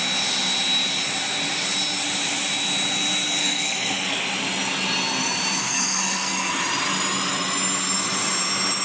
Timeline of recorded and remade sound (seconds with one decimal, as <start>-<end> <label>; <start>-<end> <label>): 0.0-3.4 recorded; 3.4-4.2 remade; 4.2-5.6 recorded; 5.6-6.5 remade; 6.5-8.8 recorded